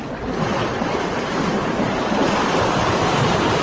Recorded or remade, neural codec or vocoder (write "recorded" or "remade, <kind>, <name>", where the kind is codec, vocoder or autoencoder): recorded